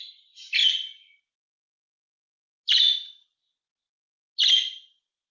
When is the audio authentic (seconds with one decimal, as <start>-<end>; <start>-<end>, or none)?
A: 0.0-0.6; 1.4-5.3